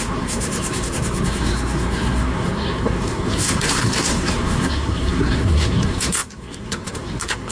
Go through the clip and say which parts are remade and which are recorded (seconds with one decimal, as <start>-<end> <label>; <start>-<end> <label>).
0.0-7.5 remade